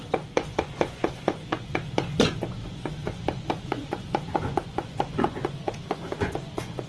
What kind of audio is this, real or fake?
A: fake